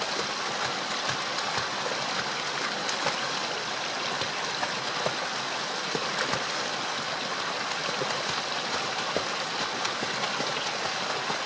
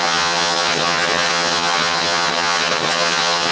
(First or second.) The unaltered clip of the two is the first